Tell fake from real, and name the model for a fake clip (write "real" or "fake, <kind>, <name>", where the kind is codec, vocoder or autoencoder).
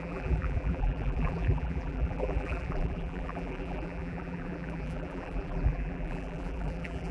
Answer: fake, vocoder, BigVGAN v2